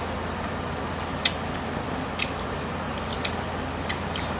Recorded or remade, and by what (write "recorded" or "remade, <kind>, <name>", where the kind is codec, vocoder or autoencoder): recorded